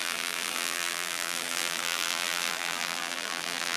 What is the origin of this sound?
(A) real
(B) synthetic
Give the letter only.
B